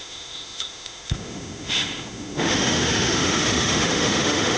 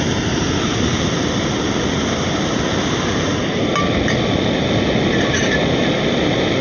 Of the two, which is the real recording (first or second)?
second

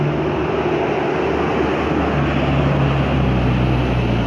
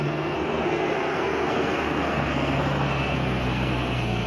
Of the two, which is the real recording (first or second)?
first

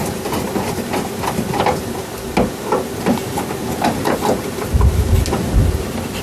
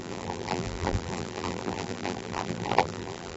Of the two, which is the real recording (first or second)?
first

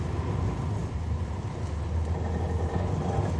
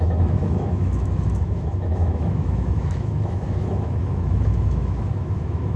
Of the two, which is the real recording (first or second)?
first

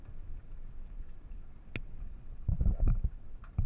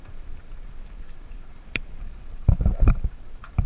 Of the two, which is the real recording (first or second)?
first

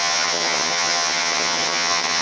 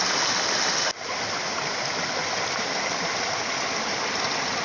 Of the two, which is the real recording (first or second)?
second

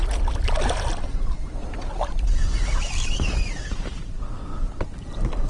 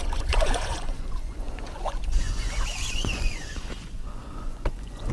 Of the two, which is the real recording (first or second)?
first